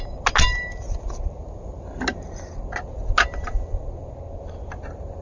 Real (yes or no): yes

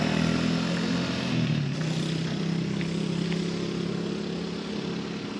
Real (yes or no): yes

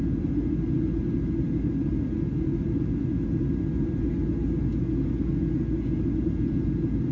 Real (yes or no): yes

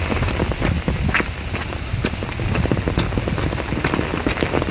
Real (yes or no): yes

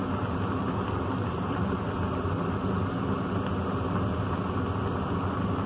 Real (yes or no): yes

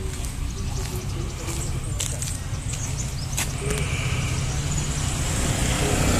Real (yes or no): yes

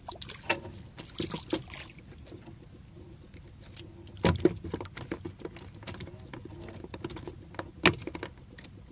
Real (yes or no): yes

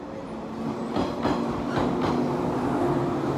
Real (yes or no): yes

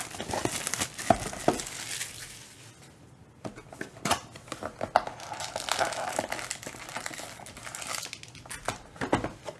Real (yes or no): yes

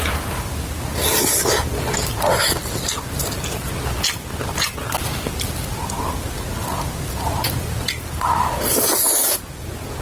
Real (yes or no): yes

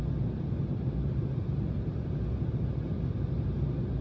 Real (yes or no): yes